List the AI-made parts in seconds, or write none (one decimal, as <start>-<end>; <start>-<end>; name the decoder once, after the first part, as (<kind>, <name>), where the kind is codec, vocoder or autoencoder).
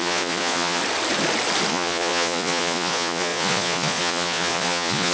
0.0-0.8 (vocoder, Vocos); 1.7-5.1